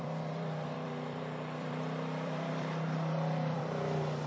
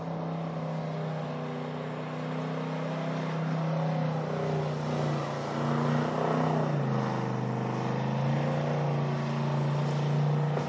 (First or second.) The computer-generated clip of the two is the first